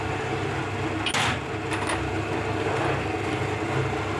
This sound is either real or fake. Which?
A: real